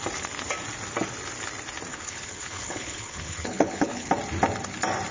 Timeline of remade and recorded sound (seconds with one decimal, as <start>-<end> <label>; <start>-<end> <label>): 0.0-1.9 recorded; 1.9-4.1 remade; 4.1-5.1 recorded